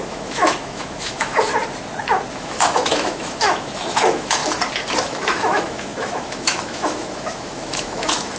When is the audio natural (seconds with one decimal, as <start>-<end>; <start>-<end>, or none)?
1.5-2.3; 4.4-5.0